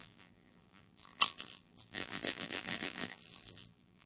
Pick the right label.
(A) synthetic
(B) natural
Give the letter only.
A